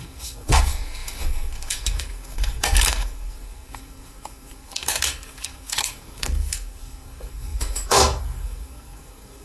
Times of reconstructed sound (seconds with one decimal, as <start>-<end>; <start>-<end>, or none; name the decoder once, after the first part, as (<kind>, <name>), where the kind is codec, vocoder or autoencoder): 0.0-9.4 (codec, SNAC)